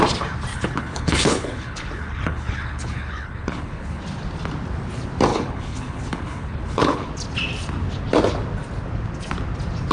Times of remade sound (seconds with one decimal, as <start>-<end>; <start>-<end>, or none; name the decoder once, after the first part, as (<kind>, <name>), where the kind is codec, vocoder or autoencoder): 0.5-4.0 (codec, HILCodec); 5.3-7.1